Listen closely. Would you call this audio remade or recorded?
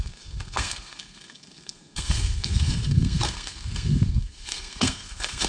remade